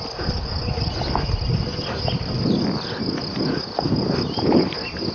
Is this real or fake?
real